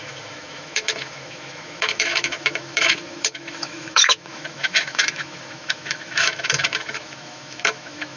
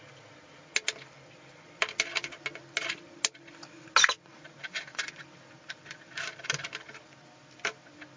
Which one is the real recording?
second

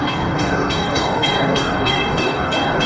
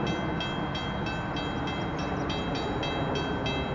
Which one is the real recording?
second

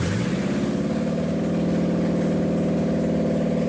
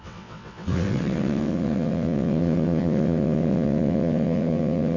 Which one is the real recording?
first